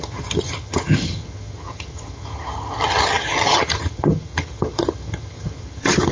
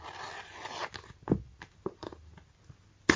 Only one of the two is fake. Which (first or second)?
first